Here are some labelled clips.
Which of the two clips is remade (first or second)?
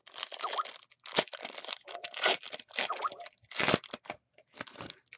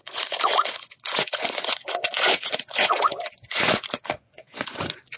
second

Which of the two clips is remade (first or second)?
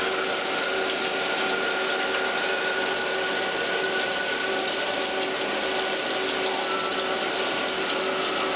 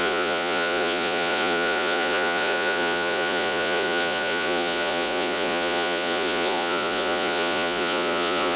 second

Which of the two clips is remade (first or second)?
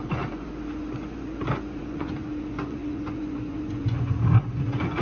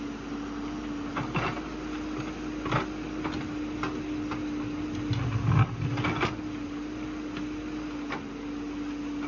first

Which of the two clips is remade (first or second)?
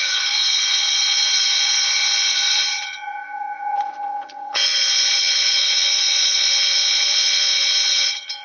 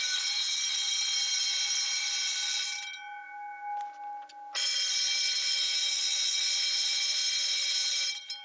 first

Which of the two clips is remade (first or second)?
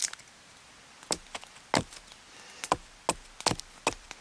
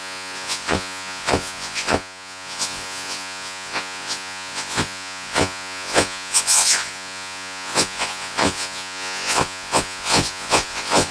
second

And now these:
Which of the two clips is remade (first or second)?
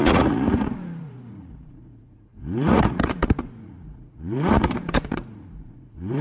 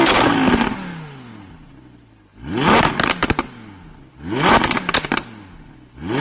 first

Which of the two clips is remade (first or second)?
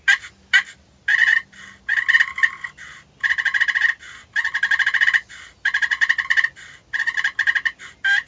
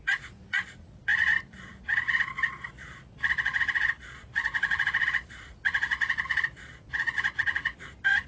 second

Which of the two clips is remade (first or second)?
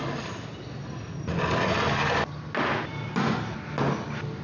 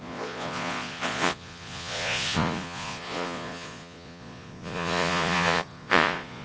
second